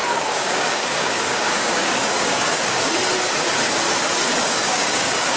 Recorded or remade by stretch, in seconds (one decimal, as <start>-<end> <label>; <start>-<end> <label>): 0.0-2.8 remade; 2.8-4.4 recorded; 4.4-5.4 remade